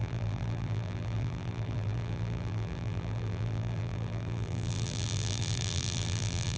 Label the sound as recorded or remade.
remade